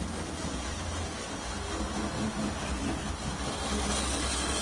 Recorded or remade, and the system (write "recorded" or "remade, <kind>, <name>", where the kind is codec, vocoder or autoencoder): recorded